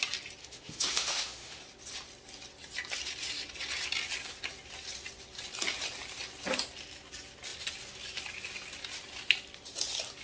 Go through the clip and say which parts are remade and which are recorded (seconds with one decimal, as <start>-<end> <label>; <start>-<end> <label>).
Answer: 0.0-0.4 recorded; 0.4-1.6 remade; 1.6-10.2 recorded